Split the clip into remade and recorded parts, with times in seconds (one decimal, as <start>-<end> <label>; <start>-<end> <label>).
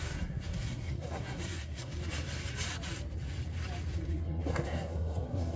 0.0-1.9 remade; 1.9-4.1 recorded; 4.1-5.6 remade